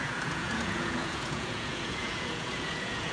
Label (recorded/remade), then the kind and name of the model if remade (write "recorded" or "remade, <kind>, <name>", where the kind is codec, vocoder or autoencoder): remade, vocoder, Vocos